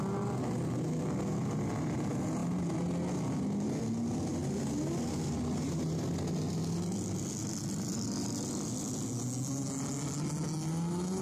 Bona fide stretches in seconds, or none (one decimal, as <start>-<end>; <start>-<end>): 0.0-11.2